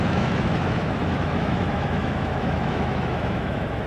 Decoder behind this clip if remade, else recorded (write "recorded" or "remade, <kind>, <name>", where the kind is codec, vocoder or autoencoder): remade, autoencoder, DAC-VAE